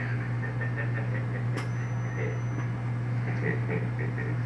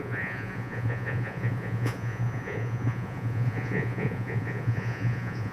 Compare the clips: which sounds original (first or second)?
first